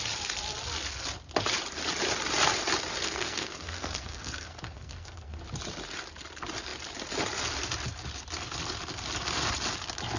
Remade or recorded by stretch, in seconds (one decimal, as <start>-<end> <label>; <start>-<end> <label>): 0.0-3.0 recorded; 3.0-5.4 remade; 5.4-10.2 recorded